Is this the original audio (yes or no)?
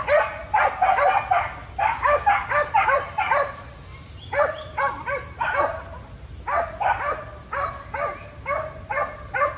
yes